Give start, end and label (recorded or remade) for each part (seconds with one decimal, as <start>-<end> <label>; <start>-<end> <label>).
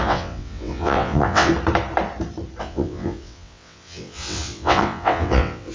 0.0-1.5 remade; 1.5-2.6 recorded; 2.6-5.7 remade